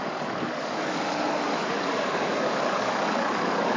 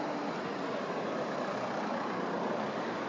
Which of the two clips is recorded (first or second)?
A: second